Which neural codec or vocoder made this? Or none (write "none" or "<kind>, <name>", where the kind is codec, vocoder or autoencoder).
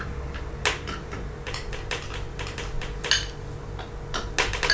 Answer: none